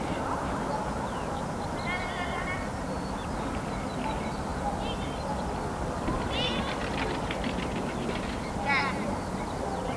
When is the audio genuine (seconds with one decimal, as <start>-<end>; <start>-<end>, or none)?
0.0-10.0